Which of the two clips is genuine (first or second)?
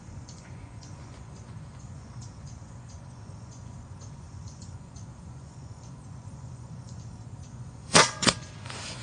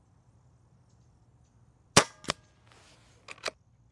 second